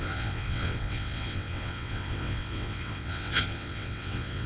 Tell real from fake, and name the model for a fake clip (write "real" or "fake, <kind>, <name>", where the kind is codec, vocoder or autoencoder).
fake, vocoder, WaveNeXt